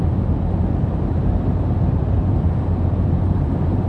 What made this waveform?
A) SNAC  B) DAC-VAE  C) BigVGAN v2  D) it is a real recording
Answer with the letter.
C